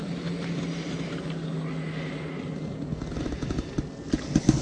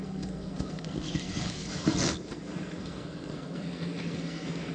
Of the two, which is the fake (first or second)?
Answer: second